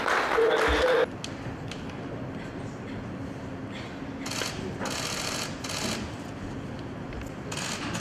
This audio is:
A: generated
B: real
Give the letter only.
B